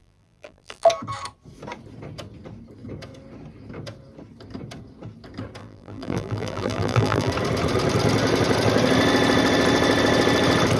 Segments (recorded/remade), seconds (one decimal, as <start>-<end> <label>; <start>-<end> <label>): 0.0-0.9 remade; 0.9-5.6 recorded; 5.6-7.3 remade; 7.3-10.8 recorded